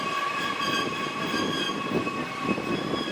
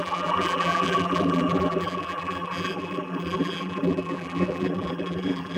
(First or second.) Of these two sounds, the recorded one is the first